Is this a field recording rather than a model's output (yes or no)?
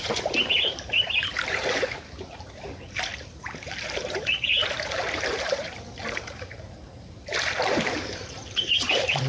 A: no